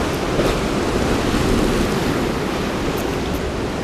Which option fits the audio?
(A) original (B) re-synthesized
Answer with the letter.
A